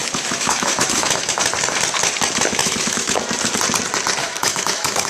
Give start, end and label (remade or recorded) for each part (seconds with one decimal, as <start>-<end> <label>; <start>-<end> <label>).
0.0-1.4 remade; 1.4-2.6 recorded; 2.6-3.2 remade; 3.2-4.2 recorded; 4.2-5.1 remade